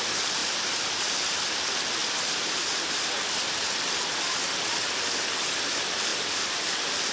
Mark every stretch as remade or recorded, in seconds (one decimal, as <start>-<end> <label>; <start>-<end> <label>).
0.0-7.1 recorded